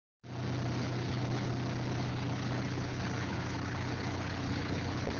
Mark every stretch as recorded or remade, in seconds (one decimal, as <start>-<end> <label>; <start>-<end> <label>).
0.0-0.8 recorded; 0.8-1.5 remade; 1.5-2.1 recorded; 2.1-5.2 remade